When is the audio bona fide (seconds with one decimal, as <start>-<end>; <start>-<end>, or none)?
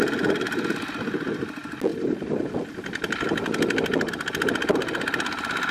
0.0-5.7